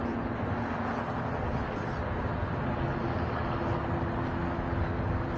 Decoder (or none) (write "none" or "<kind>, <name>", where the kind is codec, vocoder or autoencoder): none